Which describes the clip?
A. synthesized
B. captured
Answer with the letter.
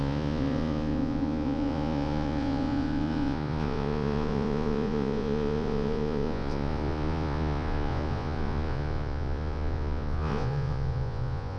A